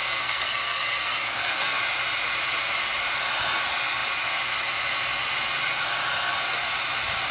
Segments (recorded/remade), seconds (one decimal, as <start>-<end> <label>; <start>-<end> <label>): 0.0-1.8 remade; 1.8-7.3 recorded